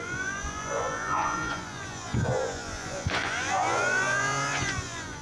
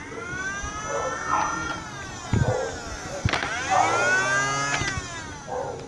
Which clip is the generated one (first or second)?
first